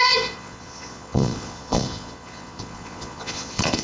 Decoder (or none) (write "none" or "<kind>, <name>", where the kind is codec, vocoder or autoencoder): vocoder, Vocos